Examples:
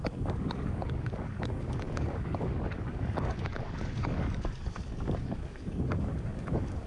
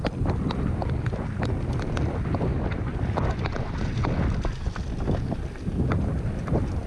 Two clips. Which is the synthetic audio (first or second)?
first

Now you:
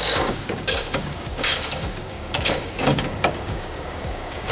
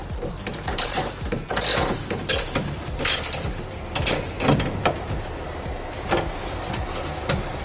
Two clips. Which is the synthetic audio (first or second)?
first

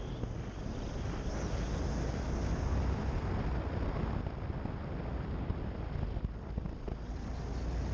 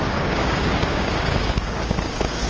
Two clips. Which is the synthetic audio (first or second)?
second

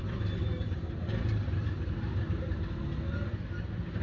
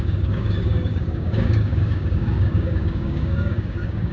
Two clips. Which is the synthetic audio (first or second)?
second